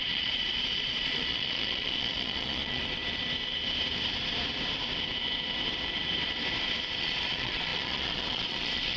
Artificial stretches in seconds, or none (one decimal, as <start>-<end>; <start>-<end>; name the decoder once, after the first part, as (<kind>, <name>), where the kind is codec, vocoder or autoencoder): 0.0-2.8 (vocoder, Vocos); 7.0-9.0